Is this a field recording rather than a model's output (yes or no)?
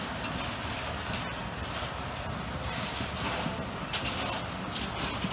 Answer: yes